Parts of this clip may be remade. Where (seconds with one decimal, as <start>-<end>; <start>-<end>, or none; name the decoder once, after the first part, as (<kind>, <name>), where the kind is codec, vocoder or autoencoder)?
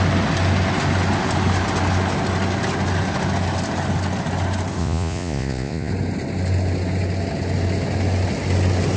4.8-5.9 (vocoder, Vocos)